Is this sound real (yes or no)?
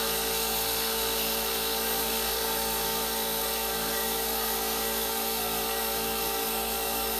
no